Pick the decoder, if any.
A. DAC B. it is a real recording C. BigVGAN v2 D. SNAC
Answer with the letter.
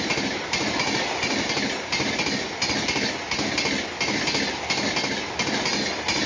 B